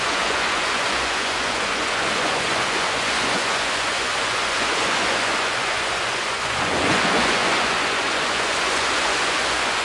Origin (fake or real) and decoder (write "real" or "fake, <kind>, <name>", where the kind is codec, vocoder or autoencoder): fake, vocoder, Vocos